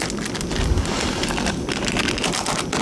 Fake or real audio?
real